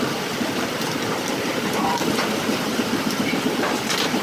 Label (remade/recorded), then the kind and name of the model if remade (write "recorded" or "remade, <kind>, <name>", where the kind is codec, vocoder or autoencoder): remade, vocoder, BigVGAN v2